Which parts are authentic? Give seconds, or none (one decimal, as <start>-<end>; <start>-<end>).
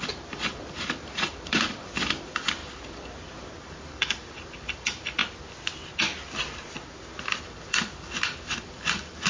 5.2-7.4